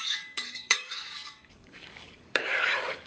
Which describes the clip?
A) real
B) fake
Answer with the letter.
B